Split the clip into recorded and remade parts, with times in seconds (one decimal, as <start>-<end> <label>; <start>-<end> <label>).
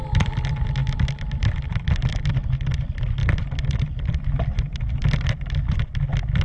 0.0-6.4 recorded